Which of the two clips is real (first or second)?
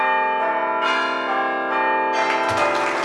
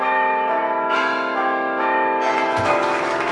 first